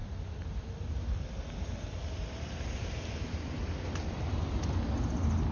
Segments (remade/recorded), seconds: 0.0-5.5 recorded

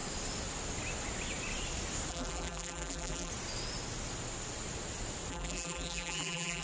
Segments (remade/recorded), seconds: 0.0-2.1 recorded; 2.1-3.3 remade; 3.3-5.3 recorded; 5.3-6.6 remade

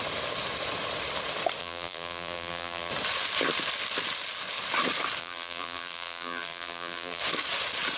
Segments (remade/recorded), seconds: 0.0-1.6 recorded; 1.6-2.9 remade; 2.9-5.2 recorded; 5.2-7.2 remade; 7.2-8.0 recorded

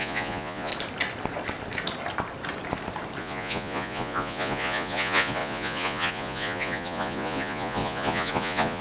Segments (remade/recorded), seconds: 0.0-0.7 remade; 0.7-3.2 recorded; 3.2-8.8 remade

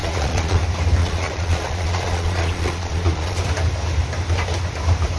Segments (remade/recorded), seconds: 0.0-0.6 remade; 0.6-1.0 recorded; 1.0-3.4 remade; 3.4-5.2 recorded

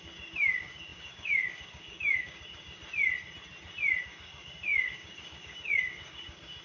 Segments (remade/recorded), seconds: 0.0-2.8 remade; 2.8-4.0 recorded; 4.0-6.6 remade

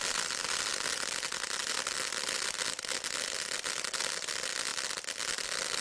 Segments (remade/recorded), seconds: 0.0-5.8 recorded